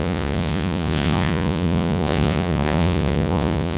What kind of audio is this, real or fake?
fake